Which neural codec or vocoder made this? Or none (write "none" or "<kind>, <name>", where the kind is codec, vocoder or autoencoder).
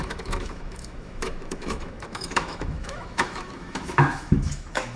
autoencoder, DAC-VAE